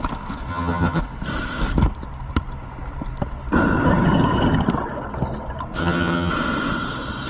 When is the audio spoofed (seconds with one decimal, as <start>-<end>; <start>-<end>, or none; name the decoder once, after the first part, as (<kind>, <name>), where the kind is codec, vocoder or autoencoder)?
0.5-1.0 (vocoder, HiFi-GAN); 5.8-6.3